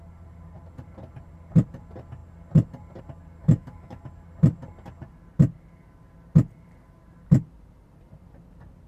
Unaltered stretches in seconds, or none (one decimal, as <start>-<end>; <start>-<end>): 0.0-3.4; 4.0-8.9

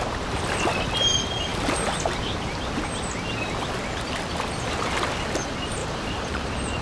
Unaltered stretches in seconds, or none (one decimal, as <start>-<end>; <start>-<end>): 0.0-5.8

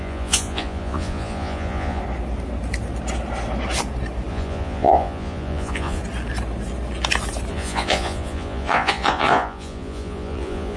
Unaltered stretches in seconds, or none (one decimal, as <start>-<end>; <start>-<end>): 2.0-4.3; 6.0-7.5

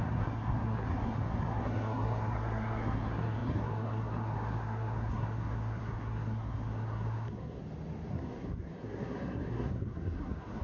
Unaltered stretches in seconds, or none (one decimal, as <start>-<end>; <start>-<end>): 7.6-8.1

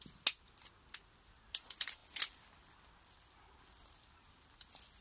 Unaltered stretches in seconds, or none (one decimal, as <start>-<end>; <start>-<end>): 0.0-5.0

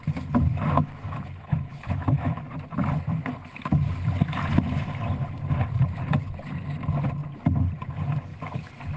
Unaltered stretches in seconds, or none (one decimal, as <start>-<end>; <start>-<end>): 0.0-0.5; 2.4-9.0

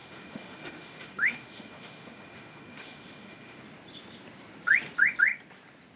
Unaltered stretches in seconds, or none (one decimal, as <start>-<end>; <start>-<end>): 3.6-6.0